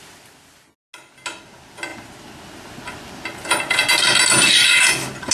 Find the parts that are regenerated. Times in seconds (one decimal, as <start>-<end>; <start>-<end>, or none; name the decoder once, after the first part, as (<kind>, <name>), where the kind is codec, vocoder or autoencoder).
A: none